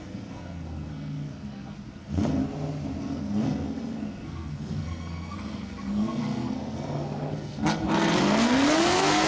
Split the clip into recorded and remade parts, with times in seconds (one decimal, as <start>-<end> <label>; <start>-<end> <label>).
0.0-2.4 remade; 2.4-3.0 recorded; 3.0-9.3 remade